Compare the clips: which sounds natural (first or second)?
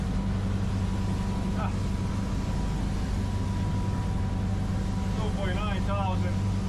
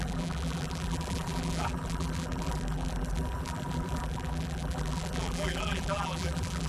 first